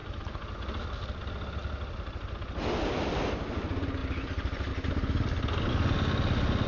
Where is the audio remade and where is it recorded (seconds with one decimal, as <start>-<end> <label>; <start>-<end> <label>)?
0.0-4.0 recorded; 4.0-4.7 remade; 4.7-6.7 recorded